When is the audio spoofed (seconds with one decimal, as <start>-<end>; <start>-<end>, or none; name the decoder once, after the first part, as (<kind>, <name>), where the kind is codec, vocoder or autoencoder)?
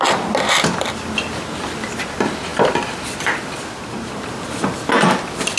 none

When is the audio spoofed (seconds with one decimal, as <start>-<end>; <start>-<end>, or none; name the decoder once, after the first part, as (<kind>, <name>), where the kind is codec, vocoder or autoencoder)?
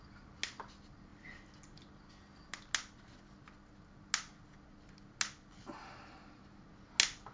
none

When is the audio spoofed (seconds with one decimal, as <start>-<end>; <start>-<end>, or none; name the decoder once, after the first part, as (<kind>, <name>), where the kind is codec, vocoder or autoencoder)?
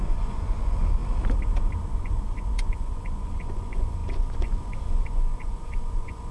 0.0-1.0 (vocoder, Vocos); 1.9-6.3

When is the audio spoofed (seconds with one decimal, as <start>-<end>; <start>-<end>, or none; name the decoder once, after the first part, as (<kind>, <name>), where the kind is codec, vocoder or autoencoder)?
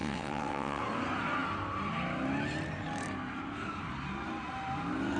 0.0-0.8 (vocoder, WaveNeXt)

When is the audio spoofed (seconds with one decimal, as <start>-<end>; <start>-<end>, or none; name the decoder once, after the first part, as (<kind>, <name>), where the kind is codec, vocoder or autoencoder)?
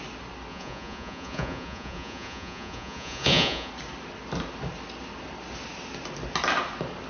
0.5-3.7 (vocoder, Vocos)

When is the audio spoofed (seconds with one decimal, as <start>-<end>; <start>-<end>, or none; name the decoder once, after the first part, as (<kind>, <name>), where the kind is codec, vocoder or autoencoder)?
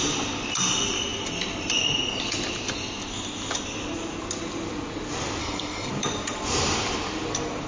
5.4-5.9 (codec, SNAC)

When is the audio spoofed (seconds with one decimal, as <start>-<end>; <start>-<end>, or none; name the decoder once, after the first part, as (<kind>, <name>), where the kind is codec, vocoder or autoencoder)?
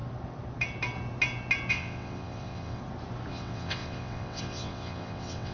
1.7-2.8 (vocoder, WaveNeXt); 3.3-5.5